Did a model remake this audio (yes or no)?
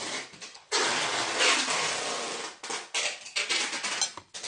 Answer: no